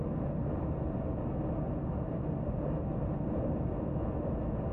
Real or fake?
real